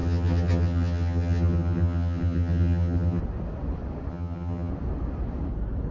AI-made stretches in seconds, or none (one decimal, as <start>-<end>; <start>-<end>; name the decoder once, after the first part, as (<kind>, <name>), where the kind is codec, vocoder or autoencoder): 0.0-3.2 (vocoder, HiFi-GAN); 4.1-4.7